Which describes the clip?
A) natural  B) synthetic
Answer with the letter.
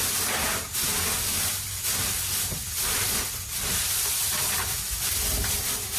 A